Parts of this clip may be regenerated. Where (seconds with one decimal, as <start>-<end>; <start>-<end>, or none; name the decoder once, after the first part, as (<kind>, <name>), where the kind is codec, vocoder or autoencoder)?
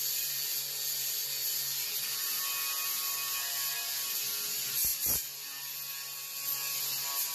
none